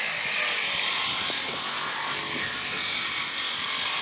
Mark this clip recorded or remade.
remade